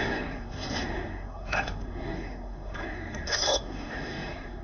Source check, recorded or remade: remade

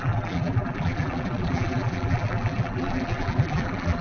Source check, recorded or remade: remade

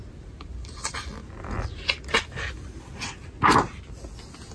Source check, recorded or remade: recorded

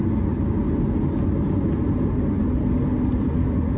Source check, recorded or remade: recorded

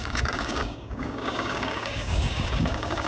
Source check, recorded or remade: remade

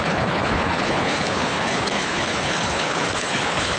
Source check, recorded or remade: remade